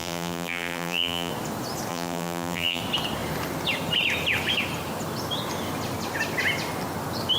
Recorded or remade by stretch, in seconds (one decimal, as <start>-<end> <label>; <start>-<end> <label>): 0.0-1.3 remade; 1.3-1.9 recorded; 1.9-2.8 remade; 2.8-7.4 recorded